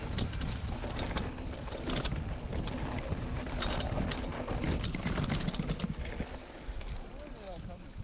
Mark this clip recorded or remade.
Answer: recorded